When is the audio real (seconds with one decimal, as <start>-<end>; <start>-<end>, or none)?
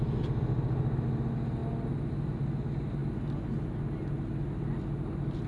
0.0-5.5